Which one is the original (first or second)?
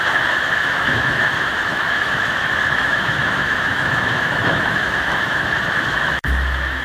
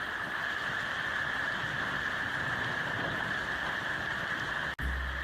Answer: second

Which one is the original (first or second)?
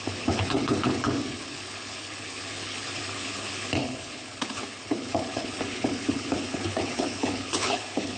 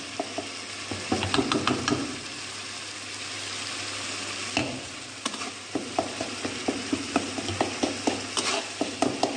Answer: second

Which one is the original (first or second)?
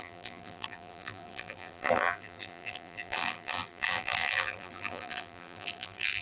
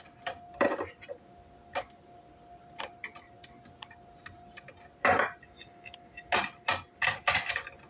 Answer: second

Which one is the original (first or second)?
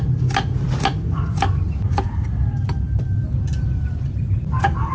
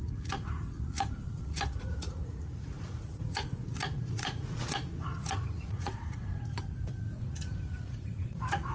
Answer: first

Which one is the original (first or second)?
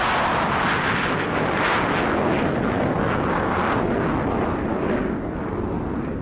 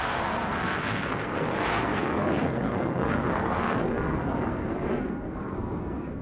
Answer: first